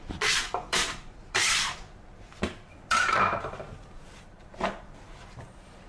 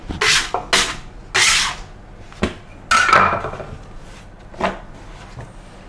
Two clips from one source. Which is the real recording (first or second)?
second